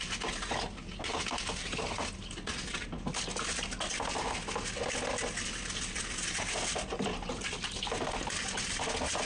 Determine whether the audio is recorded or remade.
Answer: recorded